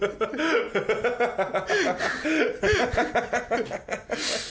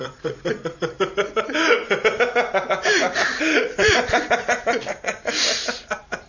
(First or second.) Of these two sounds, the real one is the first